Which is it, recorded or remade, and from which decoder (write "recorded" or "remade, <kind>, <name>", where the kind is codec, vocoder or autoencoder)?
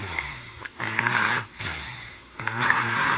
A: remade, codec, SNAC